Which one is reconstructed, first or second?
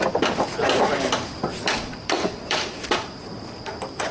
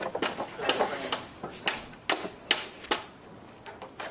first